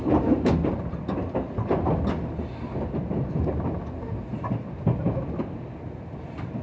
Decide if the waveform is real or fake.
real